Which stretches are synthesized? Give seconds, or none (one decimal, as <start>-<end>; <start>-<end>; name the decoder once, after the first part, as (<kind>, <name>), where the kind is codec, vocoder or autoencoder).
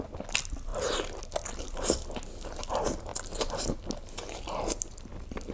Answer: none